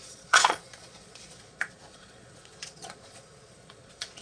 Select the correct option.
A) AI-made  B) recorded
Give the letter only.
A